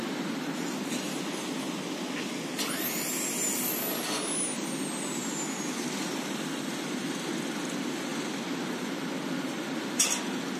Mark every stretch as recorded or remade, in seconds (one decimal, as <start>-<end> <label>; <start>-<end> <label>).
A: 0.0-10.6 recorded